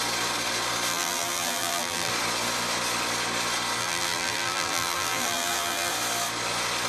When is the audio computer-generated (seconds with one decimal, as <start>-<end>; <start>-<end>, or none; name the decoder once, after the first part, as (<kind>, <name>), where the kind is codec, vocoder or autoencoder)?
0.9-2.1 (vocoder, BigVGAN v2); 3.8-5.9